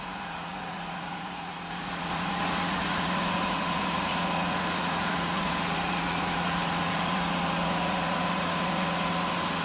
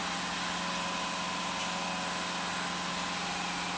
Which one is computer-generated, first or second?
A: first